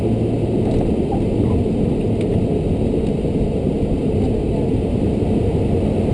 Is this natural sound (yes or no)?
yes